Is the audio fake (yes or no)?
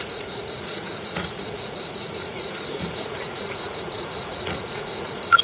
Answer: yes